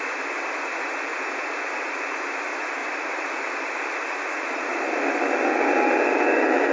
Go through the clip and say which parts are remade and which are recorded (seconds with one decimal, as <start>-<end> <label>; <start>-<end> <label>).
0.0-1.1 recorded; 1.1-2.3 remade; 2.3-2.8 recorded; 2.8-3.3 remade; 3.3-4.7 recorded; 4.7-5.3 remade; 5.3-6.7 recorded